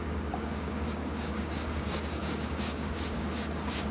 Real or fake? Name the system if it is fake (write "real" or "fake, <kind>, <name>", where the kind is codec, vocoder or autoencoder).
fake, codec, DAC